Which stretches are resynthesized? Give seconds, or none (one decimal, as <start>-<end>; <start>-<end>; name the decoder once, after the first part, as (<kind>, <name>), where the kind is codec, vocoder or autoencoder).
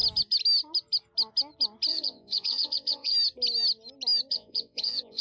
1.9-3.1 (vocoder, Vocos); 4.3-5.2